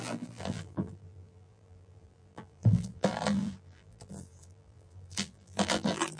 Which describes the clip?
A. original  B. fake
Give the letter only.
B